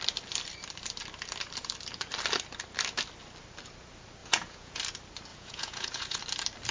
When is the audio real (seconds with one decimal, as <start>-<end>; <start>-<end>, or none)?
0.0-4.2; 4.8-5.3; 6.2-6.7